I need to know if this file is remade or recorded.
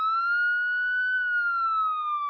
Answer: recorded